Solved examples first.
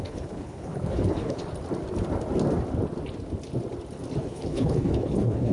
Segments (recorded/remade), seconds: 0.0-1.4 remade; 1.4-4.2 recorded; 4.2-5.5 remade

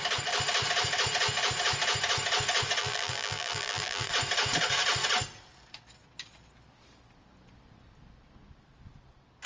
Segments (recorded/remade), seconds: 0.0-2.8 recorded; 2.8-4.1 remade; 4.1-9.5 recorded

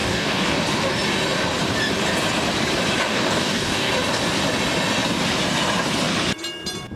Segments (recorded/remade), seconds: 0.0-0.6 remade; 0.6-3.1 recorded; 3.1-3.9 remade; 3.9-7.0 recorded

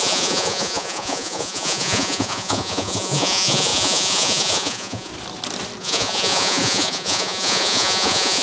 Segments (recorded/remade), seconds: 0.0-5.1 remade; 5.1-5.8 recorded; 5.8-8.4 remade

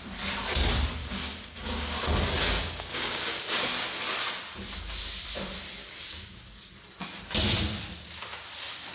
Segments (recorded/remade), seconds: 0.0-1.0 recorded; 1.0-3.6 remade; 3.6-5.8 recorded; 5.8-6.7 remade; 6.7-8.9 recorded

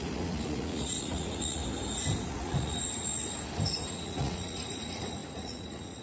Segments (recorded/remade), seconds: 0.0-1.6 remade; 1.6-2.3 recorded; 2.3-3.1 remade; 3.1-3.9 recorded; 3.9-6.0 remade

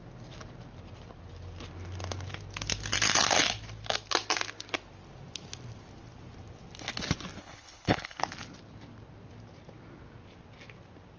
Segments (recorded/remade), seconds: 0.0-7.4 recorded; 7.4-8.2 remade; 8.2-11.2 recorded

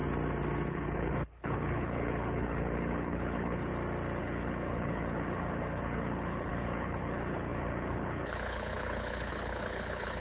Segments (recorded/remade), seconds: 0.0-0.7 recorded; 0.7-3.7 remade; 3.7-4.2 recorded; 4.2-10.2 remade